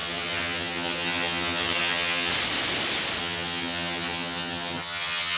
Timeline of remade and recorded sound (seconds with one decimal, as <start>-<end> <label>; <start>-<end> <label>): 0.0-2.3 remade; 2.3-3.2 recorded; 3.2-5.4 remade